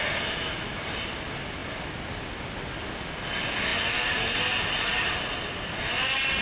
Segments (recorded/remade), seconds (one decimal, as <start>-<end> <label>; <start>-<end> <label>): 0.0-6.4 recorded